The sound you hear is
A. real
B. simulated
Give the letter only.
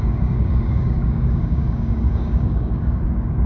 B